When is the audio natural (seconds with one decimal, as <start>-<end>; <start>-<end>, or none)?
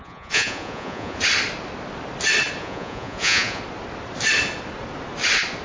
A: 1.2-2.6; 3.6-5.6